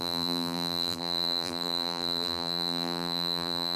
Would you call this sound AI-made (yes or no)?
yes